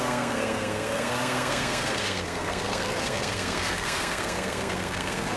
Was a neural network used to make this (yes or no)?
yes